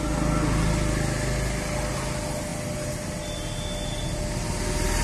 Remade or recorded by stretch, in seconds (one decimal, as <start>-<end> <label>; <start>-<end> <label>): 0.0-5.0 recorded